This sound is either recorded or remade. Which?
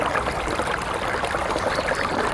recorded